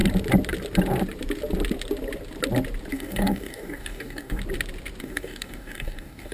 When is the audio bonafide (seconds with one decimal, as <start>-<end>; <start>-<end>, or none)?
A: 0.0-2.9; 4.4-5.0